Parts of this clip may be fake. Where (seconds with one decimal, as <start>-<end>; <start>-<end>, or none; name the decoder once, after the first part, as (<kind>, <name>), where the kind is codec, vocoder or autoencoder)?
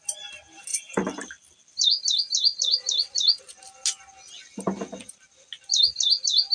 0.7-3.4 (vocoder, BigVGAN v2)